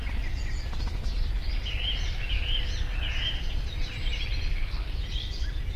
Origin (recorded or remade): recorded